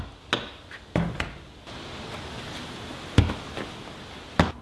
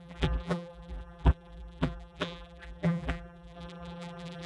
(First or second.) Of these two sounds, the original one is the first